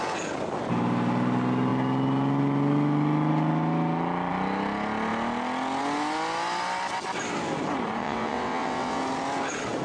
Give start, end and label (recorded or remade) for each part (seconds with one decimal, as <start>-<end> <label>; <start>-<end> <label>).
0.0-8.0 recorded; 8.0-9.0 remade; 9.0-9.8 recorded